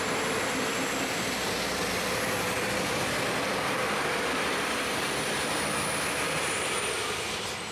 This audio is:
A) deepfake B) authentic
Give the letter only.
B